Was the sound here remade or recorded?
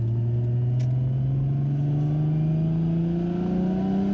recorded